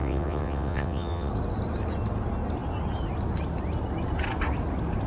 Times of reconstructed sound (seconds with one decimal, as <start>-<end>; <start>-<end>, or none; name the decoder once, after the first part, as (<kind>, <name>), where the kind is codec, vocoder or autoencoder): 0.0-1.3 (vocoder, WaveNeXt)